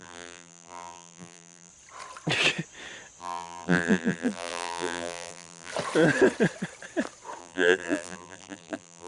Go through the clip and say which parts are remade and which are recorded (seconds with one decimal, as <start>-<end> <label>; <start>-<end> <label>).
0.0-1.7 remade; 1.7-3.2 recorded; 3.2-5.7 remade; 5.7-7.4 recorded; 7.4-9.1 remade